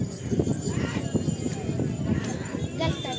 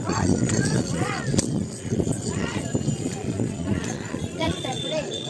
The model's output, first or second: second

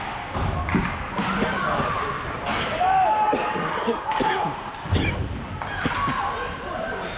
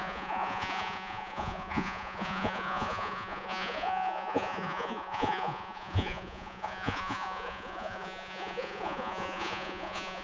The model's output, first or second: second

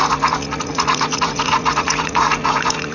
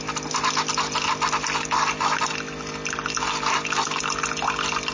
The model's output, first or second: first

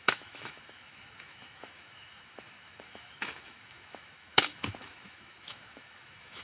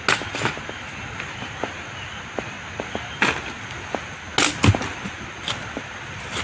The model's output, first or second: first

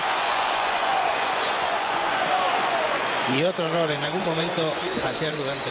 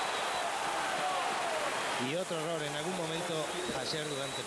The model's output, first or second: first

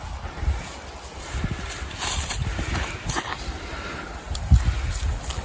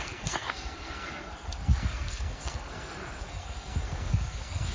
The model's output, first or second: second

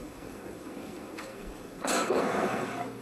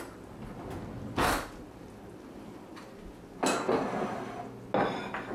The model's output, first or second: first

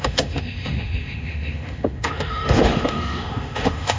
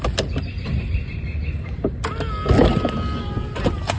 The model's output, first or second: first